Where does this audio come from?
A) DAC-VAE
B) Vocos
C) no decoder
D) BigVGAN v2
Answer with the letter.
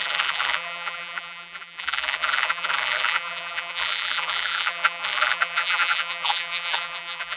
D